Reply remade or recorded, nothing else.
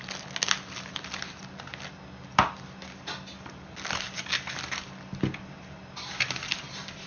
recorded